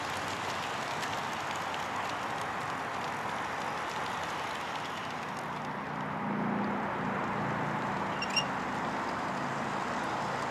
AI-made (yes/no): no